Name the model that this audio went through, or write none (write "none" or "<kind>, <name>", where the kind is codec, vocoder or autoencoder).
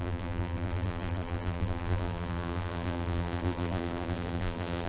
vocoder, BigVGAN v2